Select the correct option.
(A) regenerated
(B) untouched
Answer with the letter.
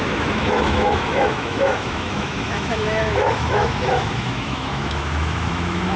A